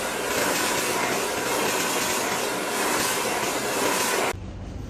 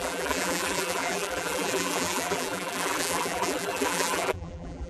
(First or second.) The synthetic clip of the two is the second